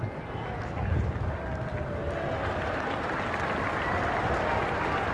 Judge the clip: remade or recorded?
recorded